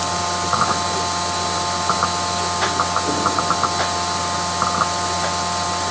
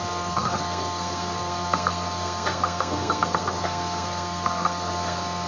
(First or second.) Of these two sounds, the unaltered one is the first